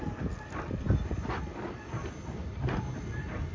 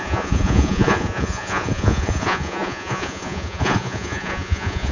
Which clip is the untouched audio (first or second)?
first